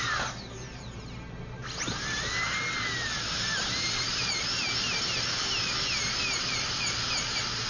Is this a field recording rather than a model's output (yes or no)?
yes